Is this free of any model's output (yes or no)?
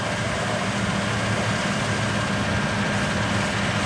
yes